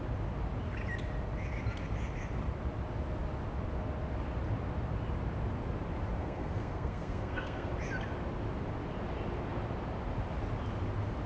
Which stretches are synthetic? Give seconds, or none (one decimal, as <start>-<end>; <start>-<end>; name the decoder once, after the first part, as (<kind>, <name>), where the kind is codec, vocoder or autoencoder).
6.2-7.7 (codec, SNAC)